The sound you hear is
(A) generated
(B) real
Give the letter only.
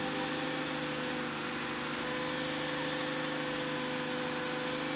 B